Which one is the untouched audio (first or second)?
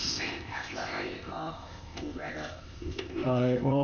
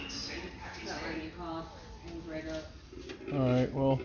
second